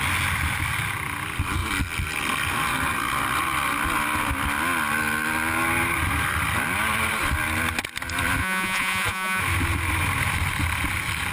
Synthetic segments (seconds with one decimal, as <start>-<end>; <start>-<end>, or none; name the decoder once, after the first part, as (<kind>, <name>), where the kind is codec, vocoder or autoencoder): 8.4-9.4 (vocoder, Vocos)